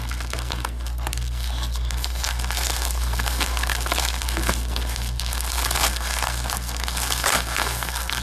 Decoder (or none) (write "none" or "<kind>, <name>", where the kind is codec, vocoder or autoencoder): codec, SNAC